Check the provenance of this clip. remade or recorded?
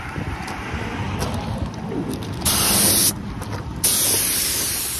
remade